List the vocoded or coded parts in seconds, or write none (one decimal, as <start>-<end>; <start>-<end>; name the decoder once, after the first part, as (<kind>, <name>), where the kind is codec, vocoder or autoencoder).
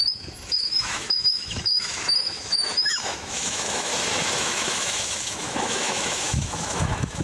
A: 0.0-3.9 (autoencoder, DAC-VAE); 4.4-7.2